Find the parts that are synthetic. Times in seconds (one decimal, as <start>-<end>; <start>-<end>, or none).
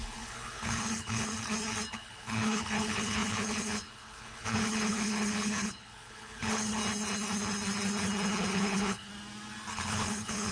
0.0-1.3; 1.9-6.8; 8.5-9.1; 9.7-10.5